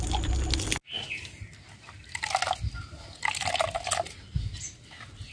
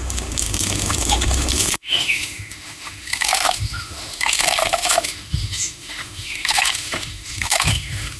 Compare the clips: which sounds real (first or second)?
first